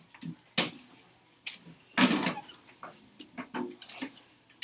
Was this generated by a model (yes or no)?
no